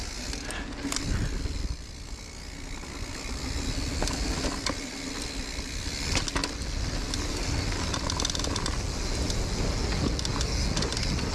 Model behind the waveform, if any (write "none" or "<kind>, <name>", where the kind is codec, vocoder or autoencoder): none